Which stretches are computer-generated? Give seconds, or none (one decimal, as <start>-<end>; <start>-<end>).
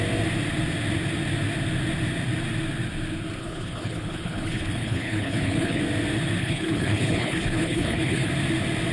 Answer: 3.4-5.8; 6.4-8.3